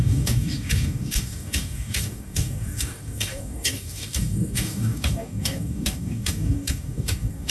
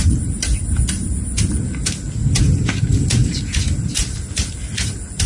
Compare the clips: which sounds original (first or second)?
second